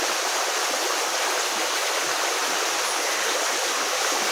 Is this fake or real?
real